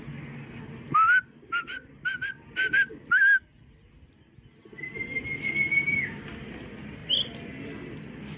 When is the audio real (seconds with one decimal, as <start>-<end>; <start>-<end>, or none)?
0.0-8.4